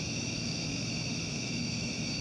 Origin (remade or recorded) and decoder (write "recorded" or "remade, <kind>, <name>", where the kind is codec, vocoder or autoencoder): remade, autoencoder, DAC-VAE